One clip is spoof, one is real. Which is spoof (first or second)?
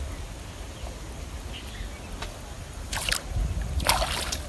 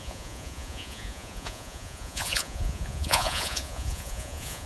second